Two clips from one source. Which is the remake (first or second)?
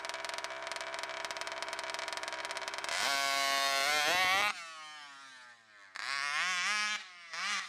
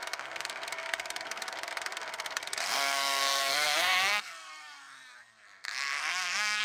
second